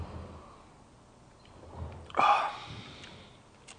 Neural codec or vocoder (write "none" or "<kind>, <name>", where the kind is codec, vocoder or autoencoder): none